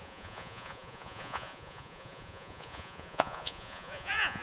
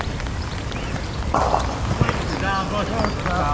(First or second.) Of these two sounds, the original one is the second